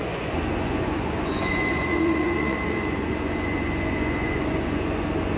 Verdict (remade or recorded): remade